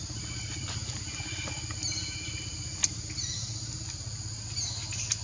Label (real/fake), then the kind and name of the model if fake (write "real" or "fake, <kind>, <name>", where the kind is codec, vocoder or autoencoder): real